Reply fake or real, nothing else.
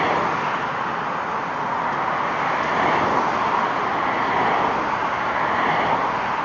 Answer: real